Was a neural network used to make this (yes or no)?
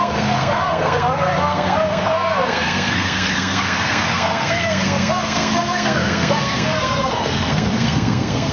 yes